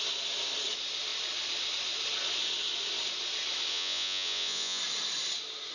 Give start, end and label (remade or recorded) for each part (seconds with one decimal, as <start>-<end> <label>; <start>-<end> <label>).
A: 0.0-3.7 recorded; 3.7-4.8 remade; 4.8-5.7 recorded